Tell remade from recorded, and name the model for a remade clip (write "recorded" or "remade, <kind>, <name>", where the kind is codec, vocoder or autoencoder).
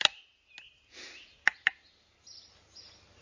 recorded